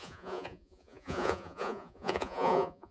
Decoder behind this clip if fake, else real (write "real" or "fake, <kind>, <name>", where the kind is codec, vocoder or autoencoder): fake, vocoder, Vocos